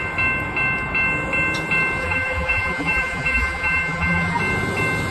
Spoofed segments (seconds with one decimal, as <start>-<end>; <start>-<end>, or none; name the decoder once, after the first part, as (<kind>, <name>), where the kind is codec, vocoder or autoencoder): 2.0-4.4 (vocoder, BigVGAN v2)